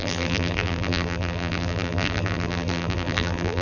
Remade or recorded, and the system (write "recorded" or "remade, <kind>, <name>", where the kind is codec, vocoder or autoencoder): remade, vocoder, BigVGAN v2